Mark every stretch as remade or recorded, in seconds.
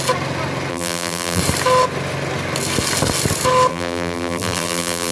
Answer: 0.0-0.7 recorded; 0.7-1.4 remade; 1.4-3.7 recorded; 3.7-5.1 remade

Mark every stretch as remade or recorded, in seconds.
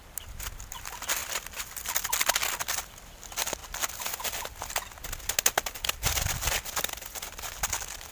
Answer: 0.0-8.1 recorded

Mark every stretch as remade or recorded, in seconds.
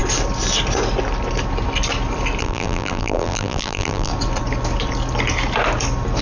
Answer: 0.0-2.4 recorded; 2.4-4.1 remade; 4.1-6.2 recorded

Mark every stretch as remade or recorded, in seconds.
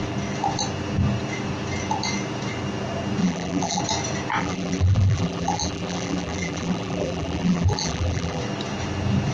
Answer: 0.0-3.2 recorded; 3.2-3.8 remade; 3.8-4.4 recorded; 4.4-8.4 remade; 8.4-9.3 recorded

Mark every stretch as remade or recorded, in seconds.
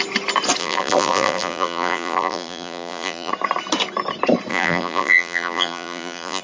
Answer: 0.0-0.6 recorded; 0.6-3.3 remade; 3.3-4.5 recorded; 4.5-6.4 remade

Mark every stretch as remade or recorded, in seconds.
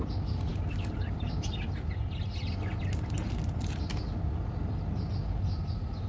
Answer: 0.0-6.1 recorded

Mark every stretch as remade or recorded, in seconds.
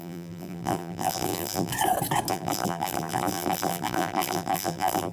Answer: 0.0-1.7 remade; 1.7-2.3 recorded; 2.3-5.1 remade